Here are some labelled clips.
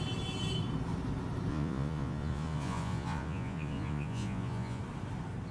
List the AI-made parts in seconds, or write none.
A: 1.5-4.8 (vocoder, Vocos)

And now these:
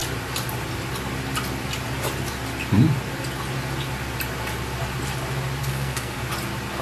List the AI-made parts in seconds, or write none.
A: 5.6-6.2 (codec, SNAC)

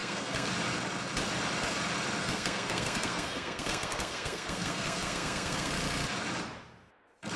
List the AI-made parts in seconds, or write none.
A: 0.0-0.5 (codec, SNAC); 2.2-5.7

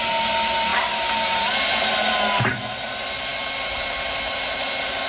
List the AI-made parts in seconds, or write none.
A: none

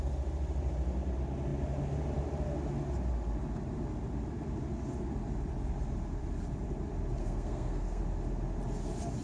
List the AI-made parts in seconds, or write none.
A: 7.2-8.0 (codec, SNAC)

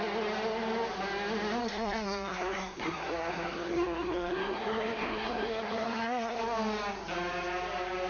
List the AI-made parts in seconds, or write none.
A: 1.6-6.4 (codec, SNAC)